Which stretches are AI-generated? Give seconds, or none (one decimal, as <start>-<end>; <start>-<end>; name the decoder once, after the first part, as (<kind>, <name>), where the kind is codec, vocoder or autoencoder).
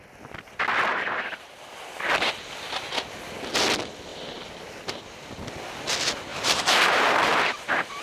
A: 0.9-1.5 (vocoder, BigVGAN v2); 4.1-5.0; 6.3-8.0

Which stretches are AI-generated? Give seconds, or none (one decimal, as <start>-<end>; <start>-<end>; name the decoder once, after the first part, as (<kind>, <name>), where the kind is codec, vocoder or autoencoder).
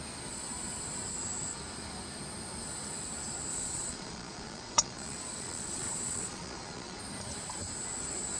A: 3.5-7.0 (vocoder, Vocos)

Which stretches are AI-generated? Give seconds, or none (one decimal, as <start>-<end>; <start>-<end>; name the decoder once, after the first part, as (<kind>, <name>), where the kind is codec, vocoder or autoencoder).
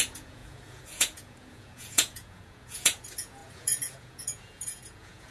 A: 0.0-5.3 (vocoder, Vocos)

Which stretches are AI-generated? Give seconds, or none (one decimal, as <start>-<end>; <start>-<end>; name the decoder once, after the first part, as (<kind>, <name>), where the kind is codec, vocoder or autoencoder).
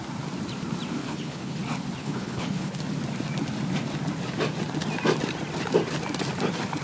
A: 1.0-1.6 (codec, HILCodec); 2.0-2.8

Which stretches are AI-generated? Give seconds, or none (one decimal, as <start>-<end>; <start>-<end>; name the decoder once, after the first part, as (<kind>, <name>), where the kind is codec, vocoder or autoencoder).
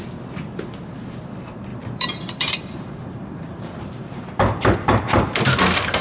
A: 1.7-5.3 (vocoder, BigVGAN v2)